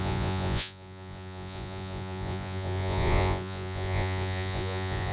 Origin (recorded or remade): remade